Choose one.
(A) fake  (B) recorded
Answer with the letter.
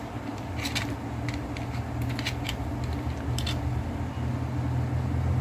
B